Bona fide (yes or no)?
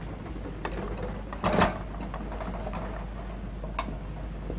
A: yes